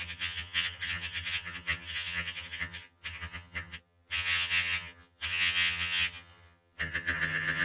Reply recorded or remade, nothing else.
remade